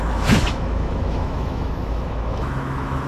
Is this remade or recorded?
remade